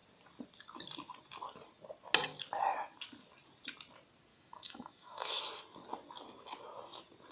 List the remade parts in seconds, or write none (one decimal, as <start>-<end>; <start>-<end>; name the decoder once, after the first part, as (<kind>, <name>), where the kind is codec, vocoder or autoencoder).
4.3-5.4 (autoencoder, DAC-VAE)